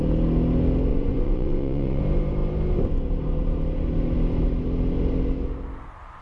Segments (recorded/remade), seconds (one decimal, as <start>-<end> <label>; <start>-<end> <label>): 0.0-0.9 recorded; 0.9-2.0 remade; 2.0-6.2 recorded